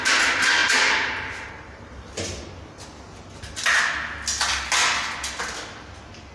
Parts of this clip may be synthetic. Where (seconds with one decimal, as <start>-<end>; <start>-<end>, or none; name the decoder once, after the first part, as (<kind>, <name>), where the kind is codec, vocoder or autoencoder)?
0.6-1.5 (vocoder, BigVGAN v2)